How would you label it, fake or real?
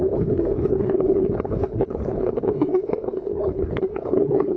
fake